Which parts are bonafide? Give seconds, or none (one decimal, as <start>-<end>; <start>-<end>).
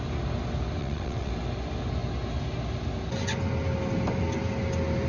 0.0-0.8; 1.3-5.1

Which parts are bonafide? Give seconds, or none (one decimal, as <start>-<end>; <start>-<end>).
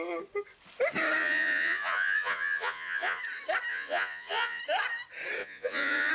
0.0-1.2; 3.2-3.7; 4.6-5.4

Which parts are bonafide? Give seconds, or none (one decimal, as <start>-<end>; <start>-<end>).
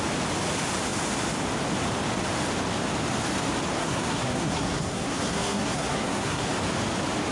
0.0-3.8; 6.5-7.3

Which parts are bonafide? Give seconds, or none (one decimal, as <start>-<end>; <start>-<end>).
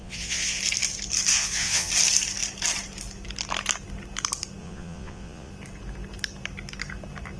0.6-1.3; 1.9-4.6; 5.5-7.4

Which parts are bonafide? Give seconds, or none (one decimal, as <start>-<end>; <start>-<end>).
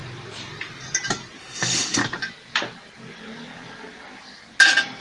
0.0-1.4; 2.0-5.0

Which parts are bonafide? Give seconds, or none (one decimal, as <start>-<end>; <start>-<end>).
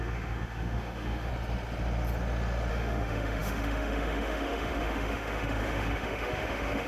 1.3-2.7